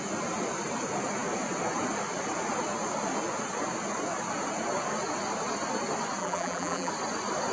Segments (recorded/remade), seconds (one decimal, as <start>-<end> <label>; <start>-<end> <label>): 0.0-6.2 recorded; 6.2-6.9 remade; 6.9-7.5 recorded